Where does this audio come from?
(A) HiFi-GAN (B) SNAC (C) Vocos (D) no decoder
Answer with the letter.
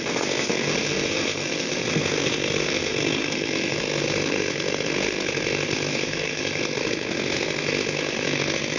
B